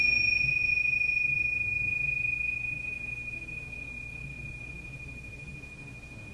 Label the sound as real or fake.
real